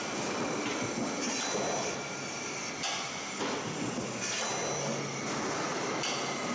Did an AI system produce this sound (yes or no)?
no